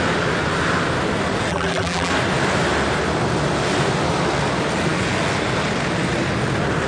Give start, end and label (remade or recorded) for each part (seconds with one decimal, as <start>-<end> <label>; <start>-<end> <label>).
0.0-1.5 recorded; 1.5-2.1 remade; 2.1-6.9 recorded